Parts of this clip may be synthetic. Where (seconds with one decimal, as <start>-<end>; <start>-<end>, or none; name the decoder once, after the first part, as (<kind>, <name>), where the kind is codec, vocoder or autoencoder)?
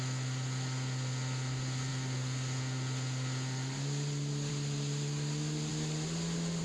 none